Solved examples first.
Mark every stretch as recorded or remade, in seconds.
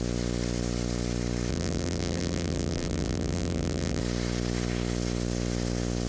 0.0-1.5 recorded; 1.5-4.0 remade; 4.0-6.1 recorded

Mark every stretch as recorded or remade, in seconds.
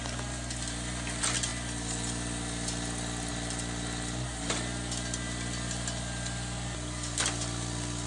0.0-8.1 recorded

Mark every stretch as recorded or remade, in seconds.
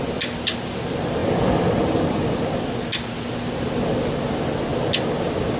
0.0-5.6 recorded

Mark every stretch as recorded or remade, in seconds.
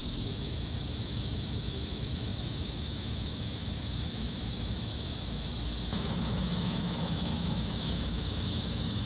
0.0-9.1 remade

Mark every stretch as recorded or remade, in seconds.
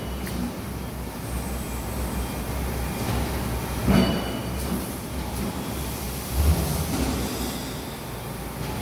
0.0-4.0 recorded; 4.0-6.0 remade; 6.0-8.8 recorded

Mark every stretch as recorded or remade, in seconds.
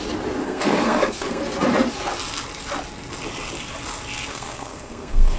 0.0-0.4 recorded; 0.4-1.4 remade; 1.4-4.3 recorded; 4.3-5.4 remade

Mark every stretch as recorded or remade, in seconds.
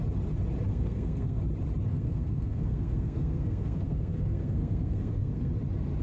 0.0-0.7 recorded; 0.7-1.4 remade; 1.4-1.9 recorded; 1.9-5.5 remade; 5.5-6.0 recorded